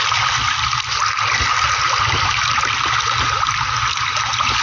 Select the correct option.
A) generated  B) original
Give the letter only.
B